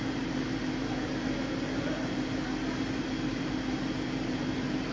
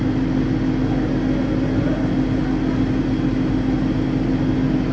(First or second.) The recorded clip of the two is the second